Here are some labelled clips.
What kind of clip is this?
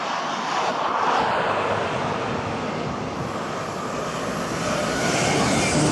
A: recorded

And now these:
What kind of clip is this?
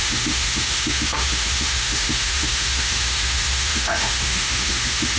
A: remade